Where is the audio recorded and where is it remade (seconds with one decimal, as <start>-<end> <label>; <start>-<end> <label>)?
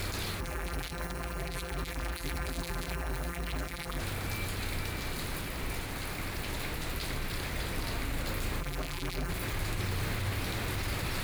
0.0-0.4 recorded; 0.4-4.0 remade; 4.0-8.6 recorded; 8.6-9.3 remade; 9.3-11.2 recorded